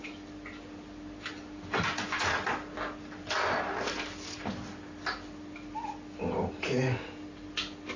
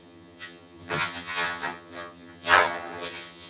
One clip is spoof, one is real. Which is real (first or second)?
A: first